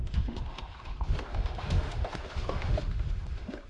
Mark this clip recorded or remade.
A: remade